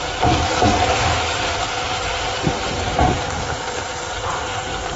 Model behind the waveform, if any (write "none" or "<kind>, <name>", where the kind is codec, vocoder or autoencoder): none